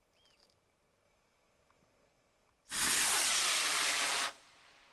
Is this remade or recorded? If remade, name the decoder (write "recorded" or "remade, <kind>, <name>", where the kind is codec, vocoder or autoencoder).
recorded